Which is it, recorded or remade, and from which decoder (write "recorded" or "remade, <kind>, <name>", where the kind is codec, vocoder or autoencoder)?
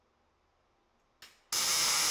recorded